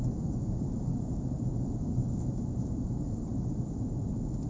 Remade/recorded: recorded